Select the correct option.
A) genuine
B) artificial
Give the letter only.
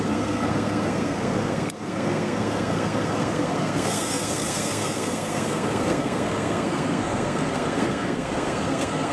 B